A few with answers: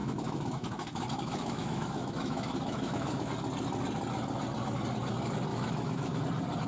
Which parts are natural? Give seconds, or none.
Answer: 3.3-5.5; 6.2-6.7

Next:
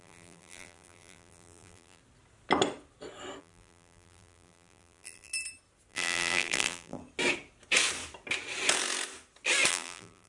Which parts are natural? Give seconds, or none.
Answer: 2.0-3.4; 5.3-5.9; 7.0-9.7

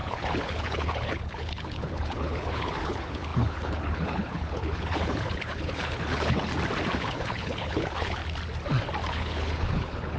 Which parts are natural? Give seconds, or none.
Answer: 6.5-7.0; 8.2-9.1

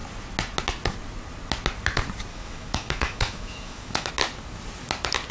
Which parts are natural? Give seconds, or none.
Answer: 0.0-2.3; 4.1-5.3

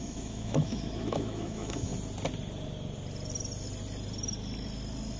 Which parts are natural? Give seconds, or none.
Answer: 1.9-5.2